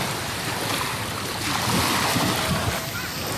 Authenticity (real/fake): real